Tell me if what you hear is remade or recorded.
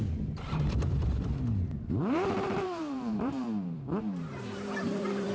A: remade